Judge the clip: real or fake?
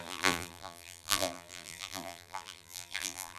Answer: fake